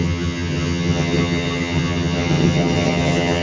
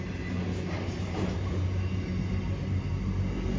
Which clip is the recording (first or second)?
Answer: second